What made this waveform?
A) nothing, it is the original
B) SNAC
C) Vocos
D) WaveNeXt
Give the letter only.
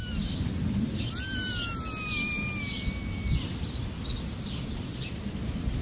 A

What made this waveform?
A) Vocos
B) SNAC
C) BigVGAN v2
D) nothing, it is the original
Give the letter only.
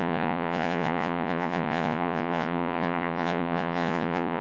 A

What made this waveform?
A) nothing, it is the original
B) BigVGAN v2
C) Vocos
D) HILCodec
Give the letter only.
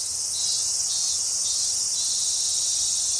A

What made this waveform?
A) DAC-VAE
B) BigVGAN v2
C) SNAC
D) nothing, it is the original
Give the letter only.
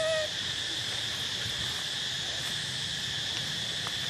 D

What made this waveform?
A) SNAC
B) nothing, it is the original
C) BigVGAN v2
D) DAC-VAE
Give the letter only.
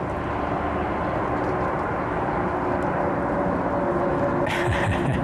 B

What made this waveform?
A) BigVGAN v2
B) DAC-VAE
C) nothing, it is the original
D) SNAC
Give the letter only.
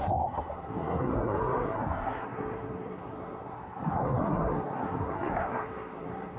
D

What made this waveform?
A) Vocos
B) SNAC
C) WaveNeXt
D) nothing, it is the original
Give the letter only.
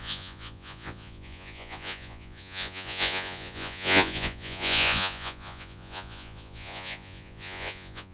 A